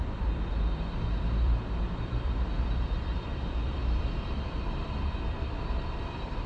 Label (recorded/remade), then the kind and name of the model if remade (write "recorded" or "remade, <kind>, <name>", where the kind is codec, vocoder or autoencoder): remade, vocoder, BigVGAN v2